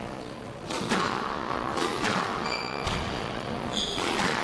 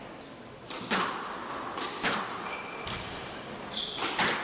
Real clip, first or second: second